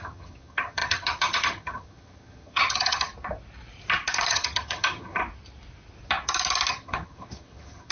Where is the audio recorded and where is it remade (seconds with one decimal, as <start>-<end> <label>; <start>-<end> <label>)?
0.0-3.1 remade; 3.1-4.3 recorded; 4.3-5.2 remade; 5.2-6.7 recorded; 6.7-7.9 remade